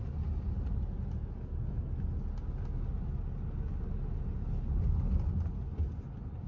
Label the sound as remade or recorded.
recorded